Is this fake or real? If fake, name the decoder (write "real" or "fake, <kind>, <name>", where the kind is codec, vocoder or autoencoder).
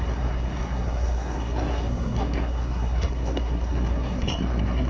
fake, codec, SNAC